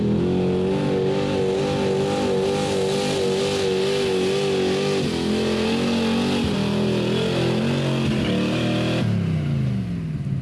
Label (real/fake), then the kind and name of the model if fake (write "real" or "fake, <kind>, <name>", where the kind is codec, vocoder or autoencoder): real